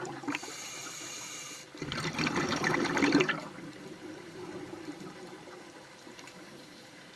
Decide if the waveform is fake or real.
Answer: fake